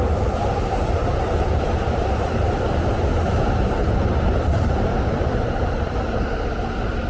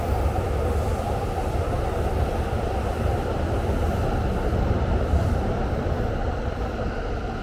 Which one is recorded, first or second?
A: second